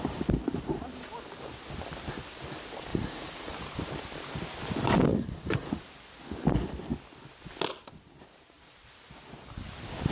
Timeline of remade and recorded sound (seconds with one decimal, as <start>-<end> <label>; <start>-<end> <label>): 0.0-2.9 recorded; 2.9-3.5 remade; 3.5-5.1 recorded; 5.1-5.8 remade; 5.8-10.1 recorded